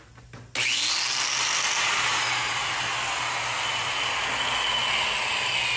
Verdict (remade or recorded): recorded